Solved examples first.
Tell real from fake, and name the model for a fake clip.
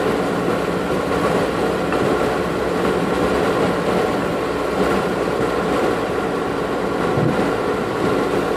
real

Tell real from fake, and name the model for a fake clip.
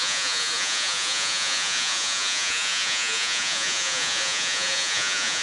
fake, vocoder, Vocos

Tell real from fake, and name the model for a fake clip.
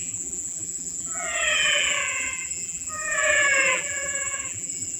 fake, vocoder, BigVGAN v2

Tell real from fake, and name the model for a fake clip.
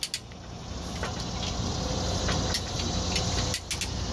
real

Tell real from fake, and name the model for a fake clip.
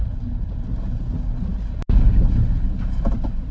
real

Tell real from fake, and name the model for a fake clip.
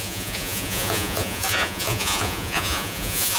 fake, vocoder, Vocos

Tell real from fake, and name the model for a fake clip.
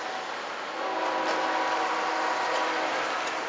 real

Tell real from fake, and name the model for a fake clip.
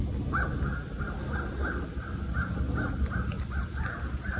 real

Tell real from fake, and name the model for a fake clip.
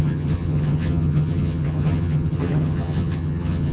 fake, vocoder, HiFi-GAN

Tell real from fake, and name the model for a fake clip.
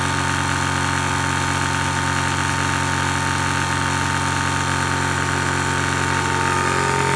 real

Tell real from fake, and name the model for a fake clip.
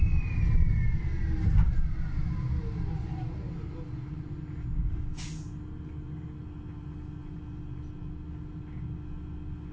real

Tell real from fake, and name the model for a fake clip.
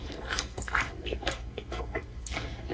fake, codec, SNAC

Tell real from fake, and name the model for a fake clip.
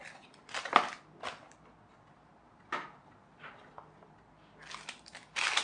real